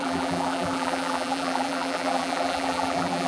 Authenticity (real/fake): fake